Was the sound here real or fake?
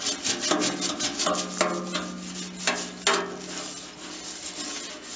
real